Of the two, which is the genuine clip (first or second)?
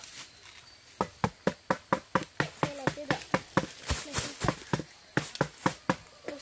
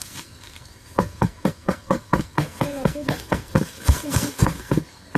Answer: first